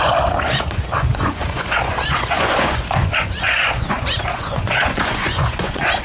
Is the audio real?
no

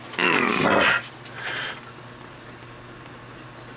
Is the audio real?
yes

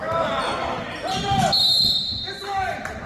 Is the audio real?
yes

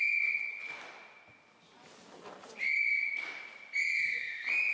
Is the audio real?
yes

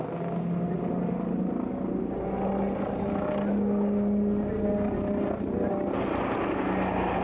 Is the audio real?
yes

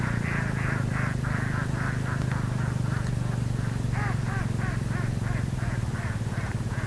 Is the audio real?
yes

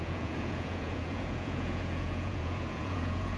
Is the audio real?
no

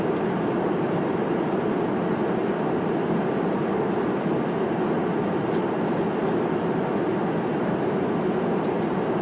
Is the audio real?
yes